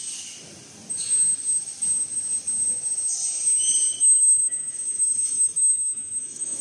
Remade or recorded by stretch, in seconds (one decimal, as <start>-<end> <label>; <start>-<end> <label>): 0.0-4.0 recorded; 4.0-6.6 remade